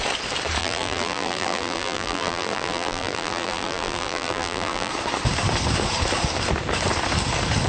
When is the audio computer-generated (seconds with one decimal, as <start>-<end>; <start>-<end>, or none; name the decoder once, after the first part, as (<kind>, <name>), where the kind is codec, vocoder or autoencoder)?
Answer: 0.6-4.9 (vocoder, BigVGAN v2)